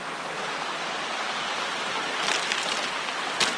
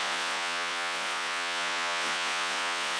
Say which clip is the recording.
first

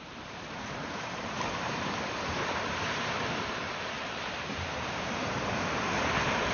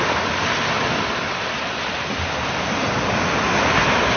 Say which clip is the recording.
second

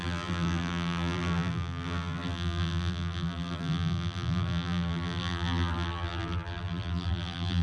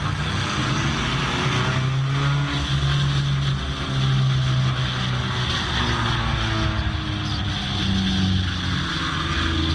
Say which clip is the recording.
second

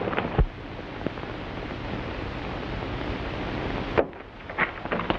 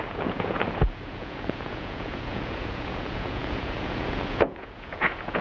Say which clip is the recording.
first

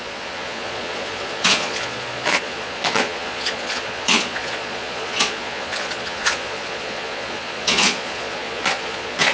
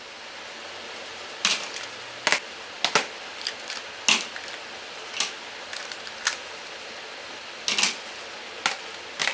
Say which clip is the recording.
second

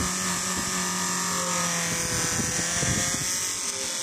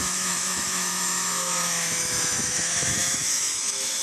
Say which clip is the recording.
first